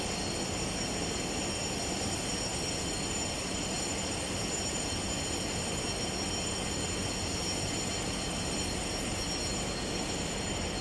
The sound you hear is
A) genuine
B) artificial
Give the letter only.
A